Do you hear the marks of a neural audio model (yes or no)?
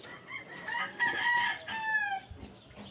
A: no